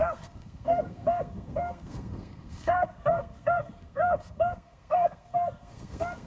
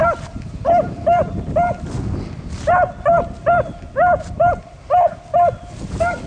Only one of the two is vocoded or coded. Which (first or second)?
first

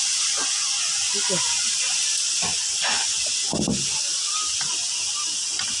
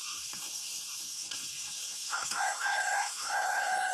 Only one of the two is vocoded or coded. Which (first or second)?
second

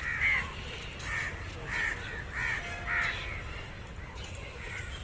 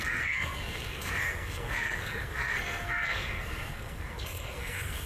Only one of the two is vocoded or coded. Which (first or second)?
second